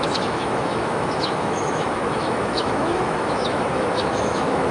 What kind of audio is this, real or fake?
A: fake